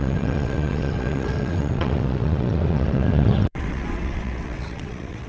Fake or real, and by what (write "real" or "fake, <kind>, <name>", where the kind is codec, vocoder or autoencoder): fake, vocoder, WaveNeXt